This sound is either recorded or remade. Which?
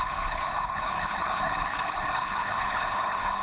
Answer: remade